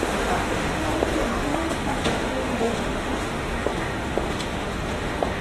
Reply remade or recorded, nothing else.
remade